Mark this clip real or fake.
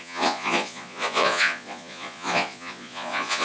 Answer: fake